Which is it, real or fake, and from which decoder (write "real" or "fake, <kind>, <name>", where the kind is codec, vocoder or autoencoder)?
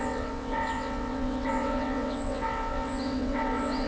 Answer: fake, vocoder, WaveNeXt